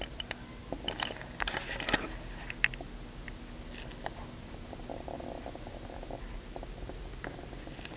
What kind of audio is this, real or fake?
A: real